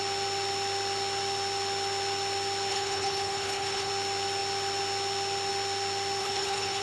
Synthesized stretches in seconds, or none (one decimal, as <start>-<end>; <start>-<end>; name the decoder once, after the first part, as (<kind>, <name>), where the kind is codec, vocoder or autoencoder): 2.7-3.9 (codec, HILCodec); 6.2-6.8

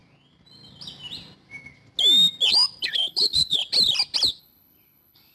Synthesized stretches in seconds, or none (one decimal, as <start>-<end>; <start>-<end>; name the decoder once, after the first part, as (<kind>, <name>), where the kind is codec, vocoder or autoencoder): 2.8-3.6 (codec, HILCodec); 4.4-5.3

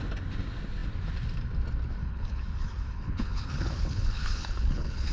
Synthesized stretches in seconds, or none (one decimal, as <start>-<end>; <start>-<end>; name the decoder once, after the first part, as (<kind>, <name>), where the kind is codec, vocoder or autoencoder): 2.0-5.1 (codec, HILCodec)

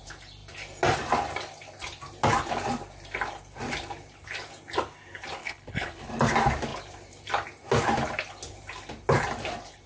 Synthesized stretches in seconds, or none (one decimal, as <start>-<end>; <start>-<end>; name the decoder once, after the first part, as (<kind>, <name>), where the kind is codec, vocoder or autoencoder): 5.4-6.1 (codec, HILCodec)

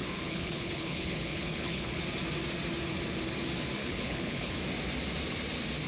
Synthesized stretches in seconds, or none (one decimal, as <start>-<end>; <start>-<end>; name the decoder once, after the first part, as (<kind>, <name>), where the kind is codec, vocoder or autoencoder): 0.0-2.0 (codec, HILCodec); 3.8-4.6

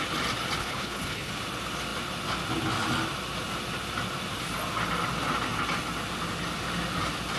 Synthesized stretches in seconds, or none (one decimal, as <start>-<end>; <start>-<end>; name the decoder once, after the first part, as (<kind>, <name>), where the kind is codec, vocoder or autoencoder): 0.6-1.3 (codec, HILCodec)

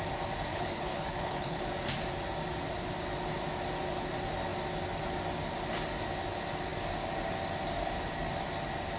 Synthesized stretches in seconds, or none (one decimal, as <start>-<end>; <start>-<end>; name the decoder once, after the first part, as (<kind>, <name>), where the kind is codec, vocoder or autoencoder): 0.5-1.6 (codec, HILCodec)